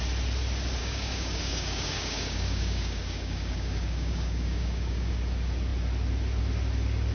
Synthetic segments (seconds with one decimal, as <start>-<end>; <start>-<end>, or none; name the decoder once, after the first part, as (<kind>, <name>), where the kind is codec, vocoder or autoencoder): 0.8-5.1 (codec, DAC)

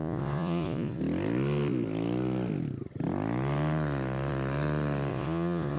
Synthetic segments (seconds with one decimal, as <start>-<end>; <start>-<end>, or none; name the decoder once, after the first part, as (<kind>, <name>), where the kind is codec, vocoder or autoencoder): 0.0-1.0 (vocoder, Vocos); 5.1-5.8